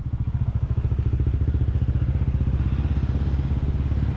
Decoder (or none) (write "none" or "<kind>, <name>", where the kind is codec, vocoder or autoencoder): none